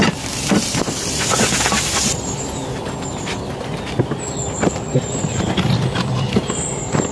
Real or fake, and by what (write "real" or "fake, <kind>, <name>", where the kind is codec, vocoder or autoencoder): fake, vocoder, BigVGAN v2